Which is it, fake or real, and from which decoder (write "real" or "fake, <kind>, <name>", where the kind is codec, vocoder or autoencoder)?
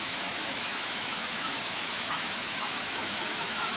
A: fake, autoencoder, DAC-VAE